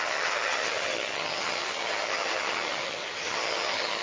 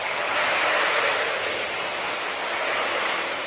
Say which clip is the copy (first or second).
first